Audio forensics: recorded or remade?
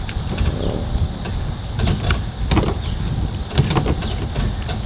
remade